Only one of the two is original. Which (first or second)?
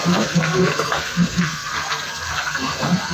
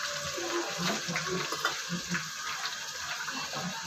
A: second